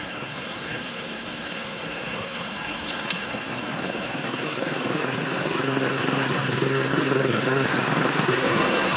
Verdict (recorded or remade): remade